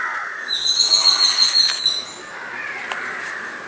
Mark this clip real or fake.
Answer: real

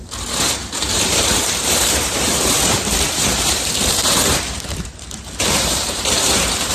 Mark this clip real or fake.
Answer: fake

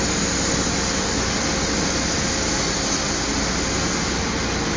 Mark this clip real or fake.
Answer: real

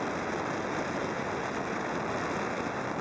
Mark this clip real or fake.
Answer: real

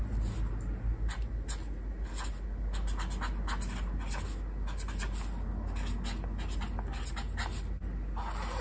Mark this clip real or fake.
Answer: real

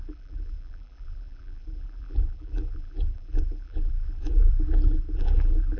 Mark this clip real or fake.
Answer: fake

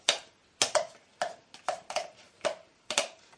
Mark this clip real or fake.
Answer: real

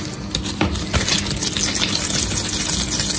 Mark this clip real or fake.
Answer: real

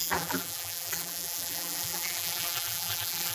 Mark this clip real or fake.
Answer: fake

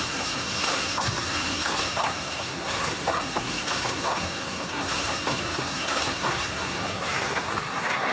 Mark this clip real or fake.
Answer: fake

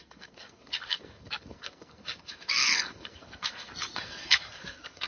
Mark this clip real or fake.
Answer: fake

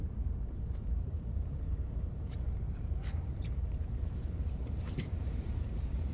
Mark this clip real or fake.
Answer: fake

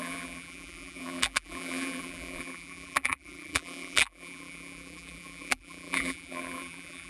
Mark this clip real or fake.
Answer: fake